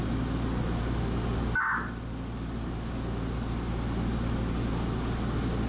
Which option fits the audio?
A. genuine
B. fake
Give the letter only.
A